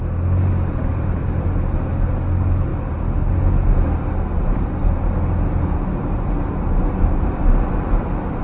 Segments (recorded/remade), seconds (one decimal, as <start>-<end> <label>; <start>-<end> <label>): 0.0-0.9 recorded; 0.9-1.5 remade; 1.5-8.4 recorded

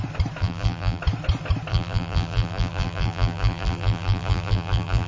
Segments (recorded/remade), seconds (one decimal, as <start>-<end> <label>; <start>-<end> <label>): 0.0-0.4 recorded; 0.4-1.0 remade; 1.0-1.7 recorded; 1.7-5.1 remade

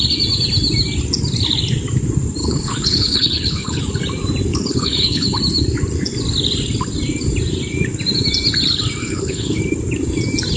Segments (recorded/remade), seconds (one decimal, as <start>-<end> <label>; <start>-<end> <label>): 0.0-2.4 recorded; 2.4-3.8 remade; 3.8-4.5 recorded; 4.5-5.4 remade; 5.4-9.0 recorded; 9.0-9.6 remade; 9.6-10.6 recorded

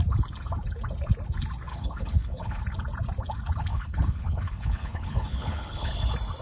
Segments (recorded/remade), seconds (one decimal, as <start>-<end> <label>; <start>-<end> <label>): 0.0-1.7 recorded; 1.7-2.6 remade; 2.6-3.7 recorded; 3.7-5.9 remade; 5.9-6.4 recorded